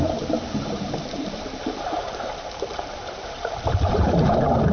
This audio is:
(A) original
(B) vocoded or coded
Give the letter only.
B